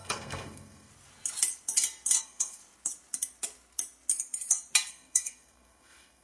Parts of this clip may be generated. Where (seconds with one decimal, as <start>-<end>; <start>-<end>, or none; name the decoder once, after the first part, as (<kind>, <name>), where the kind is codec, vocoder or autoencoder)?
0.0-0.9 (codec, SNAC); 2.2-2.6; 4.9-6.2